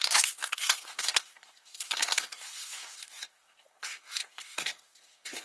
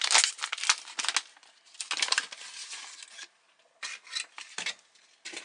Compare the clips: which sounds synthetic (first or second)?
first